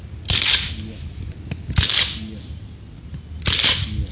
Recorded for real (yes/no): yes